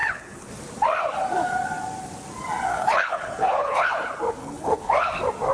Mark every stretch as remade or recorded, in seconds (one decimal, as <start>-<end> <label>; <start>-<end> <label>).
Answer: 0.0-0.5 remade; 0.5-2.7 recorded; 2.7-3.9 remade; 3.9-4.4 recorded; 4.4-5.1 remade; 5.1-5.5 recorded